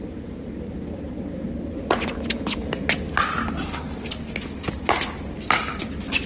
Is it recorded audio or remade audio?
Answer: recorded